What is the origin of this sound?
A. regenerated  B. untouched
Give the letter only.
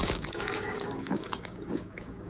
A